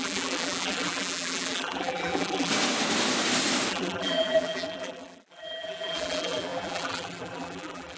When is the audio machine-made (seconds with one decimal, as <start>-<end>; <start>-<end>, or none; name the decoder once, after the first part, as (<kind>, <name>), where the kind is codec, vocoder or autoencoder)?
0.0-2.5 (vocoder, BigVGAN v2); 3.7-8.0